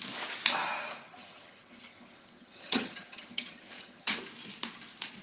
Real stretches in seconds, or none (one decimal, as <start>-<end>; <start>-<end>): 0.0-1.1; 4.2-5.2